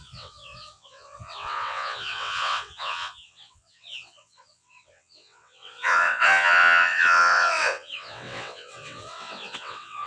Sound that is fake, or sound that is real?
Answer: fake